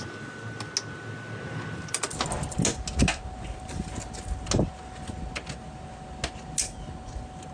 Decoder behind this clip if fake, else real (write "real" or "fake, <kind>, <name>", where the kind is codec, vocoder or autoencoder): real